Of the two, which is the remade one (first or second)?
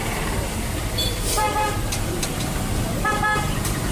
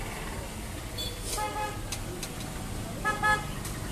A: first